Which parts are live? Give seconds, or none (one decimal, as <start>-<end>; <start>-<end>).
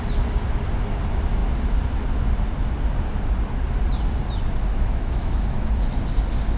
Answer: 0.0-4.7; 5.7-6.6